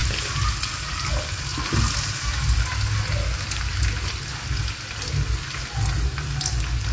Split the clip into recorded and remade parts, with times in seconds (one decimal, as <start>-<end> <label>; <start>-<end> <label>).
0.0-6.9 recorded

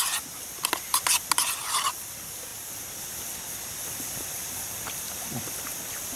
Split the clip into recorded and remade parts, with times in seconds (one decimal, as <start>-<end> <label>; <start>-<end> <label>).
0.0-1.6 recorded; 1.6-2.1 remade; 2.1-6.2 recorded

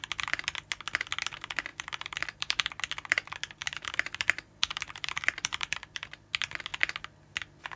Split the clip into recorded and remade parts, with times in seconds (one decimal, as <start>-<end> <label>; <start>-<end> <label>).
0.0-1.7 recorded; 1.7-2.7 remade; 2.7-3.6 recorded; 3.6-6.1 remade; 6.1-7.8 recorded

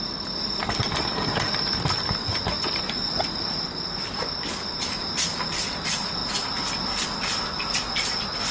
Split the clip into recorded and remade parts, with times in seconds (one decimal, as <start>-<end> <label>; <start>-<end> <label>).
0.0-8.5 recorded

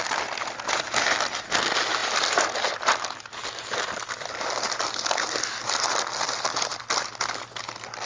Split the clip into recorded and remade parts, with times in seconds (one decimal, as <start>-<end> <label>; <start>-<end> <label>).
0.0-8.1 recorded

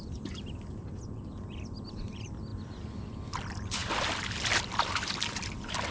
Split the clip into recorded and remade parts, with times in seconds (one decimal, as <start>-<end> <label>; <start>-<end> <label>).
0.0-2.5 recorded; 2.5-3.1 remade; 3.1-5.9 recorded

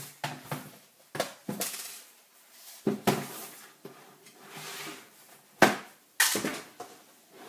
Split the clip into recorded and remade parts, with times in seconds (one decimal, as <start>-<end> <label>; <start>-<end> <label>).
0.0-1.4 recorded; 1.4-5.1 remade; 5.1-7.5 recorded